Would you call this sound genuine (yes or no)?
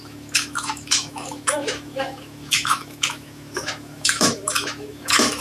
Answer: no